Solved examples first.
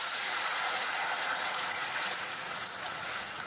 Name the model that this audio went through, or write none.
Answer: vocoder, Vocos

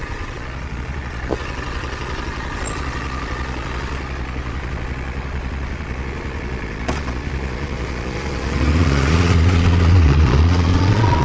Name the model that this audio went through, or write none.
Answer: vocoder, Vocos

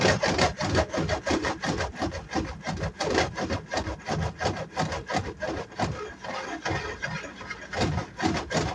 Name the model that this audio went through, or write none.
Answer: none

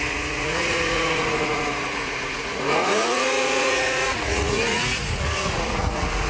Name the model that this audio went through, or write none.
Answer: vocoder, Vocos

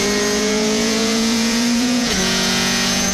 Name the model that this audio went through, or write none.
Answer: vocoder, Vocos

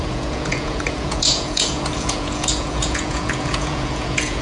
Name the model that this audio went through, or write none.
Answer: vocoder, Vocos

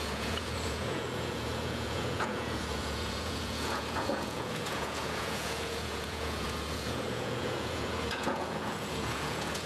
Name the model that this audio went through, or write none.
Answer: vocoder, Vocos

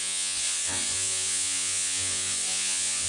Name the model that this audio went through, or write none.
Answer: vocoder, Vocos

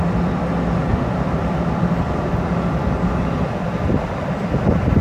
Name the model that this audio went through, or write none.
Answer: none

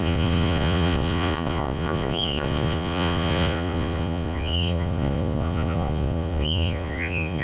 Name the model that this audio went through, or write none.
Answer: vocoder, Vocos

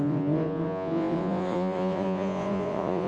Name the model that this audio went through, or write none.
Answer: vocoder, Vocos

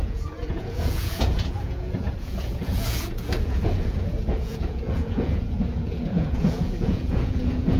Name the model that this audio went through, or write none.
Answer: vocoder, Vocos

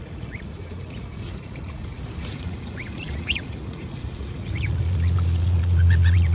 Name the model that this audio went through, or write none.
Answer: vocoder, Vocos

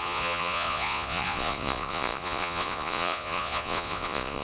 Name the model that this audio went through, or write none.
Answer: vocoder, Vocos